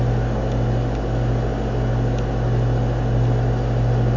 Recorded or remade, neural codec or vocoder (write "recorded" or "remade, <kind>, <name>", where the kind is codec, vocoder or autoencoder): recorded